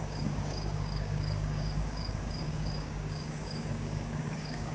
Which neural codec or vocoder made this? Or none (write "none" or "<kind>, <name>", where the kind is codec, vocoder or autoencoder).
codec, DAC